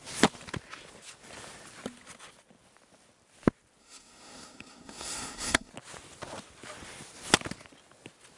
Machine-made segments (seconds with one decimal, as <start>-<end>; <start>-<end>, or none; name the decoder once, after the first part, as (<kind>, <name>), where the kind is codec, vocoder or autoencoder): 3.8-5.7 (codec, SNAC)